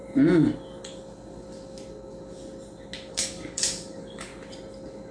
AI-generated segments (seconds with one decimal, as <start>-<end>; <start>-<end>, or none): 3.1-4.3